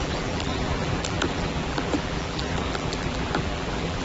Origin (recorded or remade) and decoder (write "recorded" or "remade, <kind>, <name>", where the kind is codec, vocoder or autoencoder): remade, vocoder, BigVGAN v2